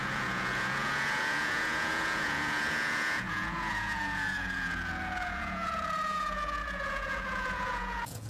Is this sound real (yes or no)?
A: no